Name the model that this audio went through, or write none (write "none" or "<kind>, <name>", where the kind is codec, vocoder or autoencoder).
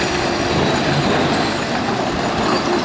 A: none